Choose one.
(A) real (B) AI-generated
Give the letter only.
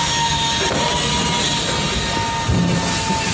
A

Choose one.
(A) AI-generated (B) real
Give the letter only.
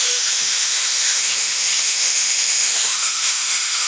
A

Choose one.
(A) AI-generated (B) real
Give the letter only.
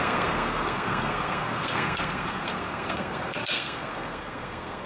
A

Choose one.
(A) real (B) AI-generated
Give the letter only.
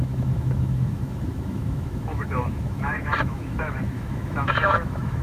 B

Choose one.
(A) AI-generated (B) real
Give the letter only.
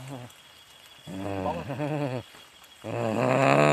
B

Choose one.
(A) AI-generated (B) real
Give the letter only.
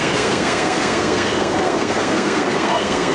A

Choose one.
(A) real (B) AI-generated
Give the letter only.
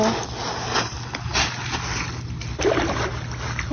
A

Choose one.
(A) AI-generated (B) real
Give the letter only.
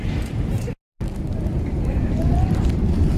A